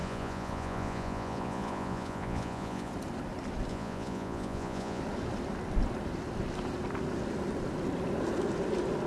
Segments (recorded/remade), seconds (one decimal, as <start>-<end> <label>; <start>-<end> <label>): 0.0-2.9 remade; 2.9-3.7 recorded; 3.7-5.0 remade; 5.0-9.1 recorded